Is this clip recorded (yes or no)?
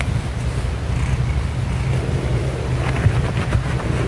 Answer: yes